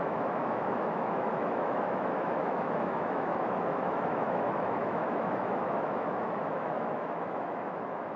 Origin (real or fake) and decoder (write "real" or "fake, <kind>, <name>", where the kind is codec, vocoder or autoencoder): fake, autoencoder, DAC-VAE